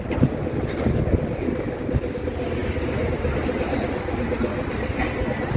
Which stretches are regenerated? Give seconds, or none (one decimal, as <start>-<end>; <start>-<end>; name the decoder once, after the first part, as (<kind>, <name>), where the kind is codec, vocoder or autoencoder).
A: 2.6-3.8 (vocoder, BigVGAN v2)